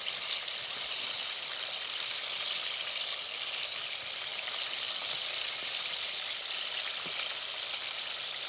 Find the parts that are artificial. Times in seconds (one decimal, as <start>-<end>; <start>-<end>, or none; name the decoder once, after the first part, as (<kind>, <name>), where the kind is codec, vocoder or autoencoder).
none